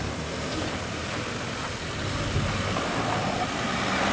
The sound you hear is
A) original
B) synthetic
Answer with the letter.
A